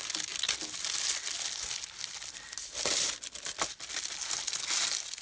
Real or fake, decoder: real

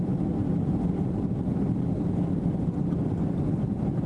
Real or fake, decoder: real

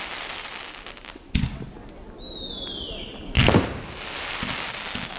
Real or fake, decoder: real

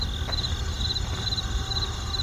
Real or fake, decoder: real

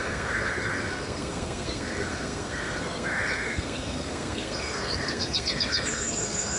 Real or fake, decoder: fake, codec, SNAC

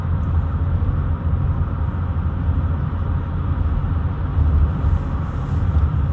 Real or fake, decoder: real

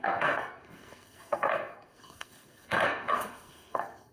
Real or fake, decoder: fake, codec, SNAC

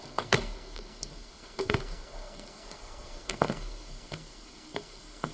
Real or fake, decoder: fake, codec, SNAC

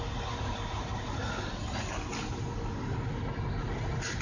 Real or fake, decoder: real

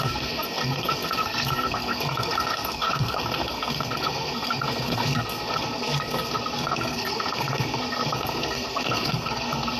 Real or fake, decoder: fake, codec, SNAC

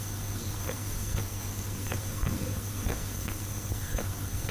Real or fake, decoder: fake, codec, SNAC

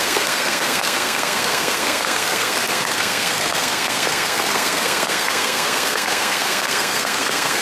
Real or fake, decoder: fake, codec, SNAC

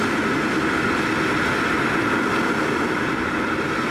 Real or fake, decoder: real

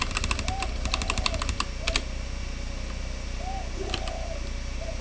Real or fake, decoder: real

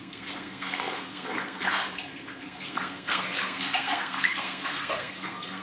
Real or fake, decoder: fake, codec, SNAC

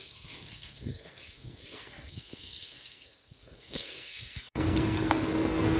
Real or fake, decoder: fake, codec, SNAC